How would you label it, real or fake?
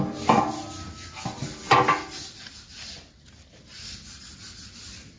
real